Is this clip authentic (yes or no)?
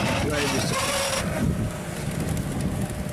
yes